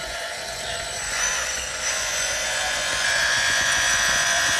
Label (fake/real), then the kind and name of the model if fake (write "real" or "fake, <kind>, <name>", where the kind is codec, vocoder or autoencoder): fake, vocoder, Vocos